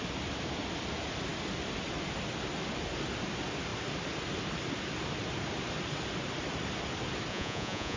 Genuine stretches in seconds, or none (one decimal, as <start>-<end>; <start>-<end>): 0.0-7.3